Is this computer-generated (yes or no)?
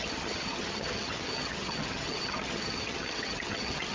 yes